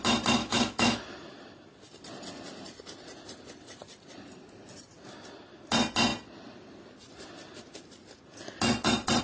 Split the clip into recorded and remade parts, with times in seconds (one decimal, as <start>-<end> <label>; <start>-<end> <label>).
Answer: 0.0-0.4 recorded; 0.4-1.0 remade; 1.0-9.2 recorded